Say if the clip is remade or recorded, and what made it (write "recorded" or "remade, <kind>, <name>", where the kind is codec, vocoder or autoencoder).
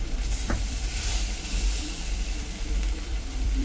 remade, vocoder, BigVGAN v2